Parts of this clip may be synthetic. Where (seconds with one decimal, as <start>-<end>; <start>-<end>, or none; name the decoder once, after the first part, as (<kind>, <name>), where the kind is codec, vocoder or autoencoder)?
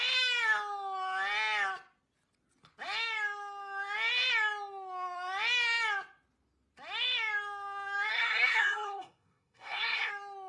8.1-10.1 (codec, SNAC)